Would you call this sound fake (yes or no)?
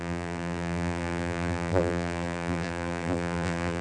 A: yes